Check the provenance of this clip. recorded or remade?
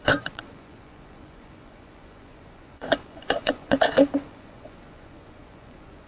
remade